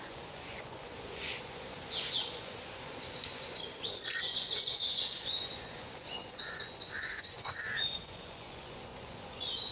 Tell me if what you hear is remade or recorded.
remade